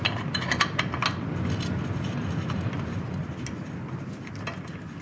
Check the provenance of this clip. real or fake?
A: real